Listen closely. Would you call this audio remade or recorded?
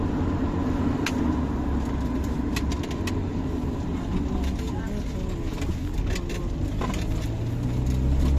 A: recorded